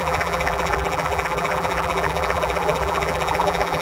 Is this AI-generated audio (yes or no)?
yes